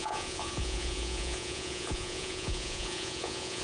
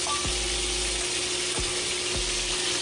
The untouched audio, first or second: second